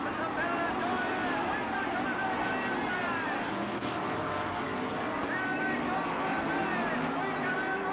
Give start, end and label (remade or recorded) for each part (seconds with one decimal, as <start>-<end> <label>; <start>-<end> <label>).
0.0-3.6 recorded; 3.6-4.9 remade; 4.9-7.9 recorded

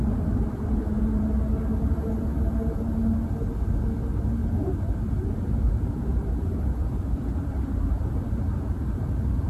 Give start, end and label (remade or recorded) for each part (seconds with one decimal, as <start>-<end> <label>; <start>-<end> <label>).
0.0-1.0 remade; 1.0-4.4 recorded; 4.4-9.0 remade; 9.0-9.5 recorded

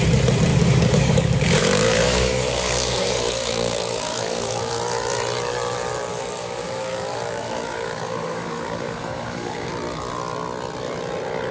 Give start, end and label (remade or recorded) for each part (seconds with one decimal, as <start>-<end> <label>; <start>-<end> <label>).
0.0-0.5 recorded; 0.5-4.7 remade; 4.7-6.1 recorded; 6.1-9.7 remade; 9.7-11.5 recorded